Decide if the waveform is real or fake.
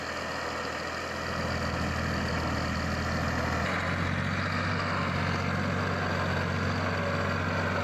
real